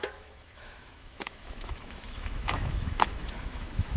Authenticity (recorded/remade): remade